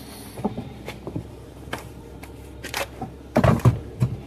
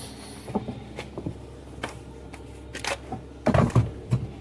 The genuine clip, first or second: second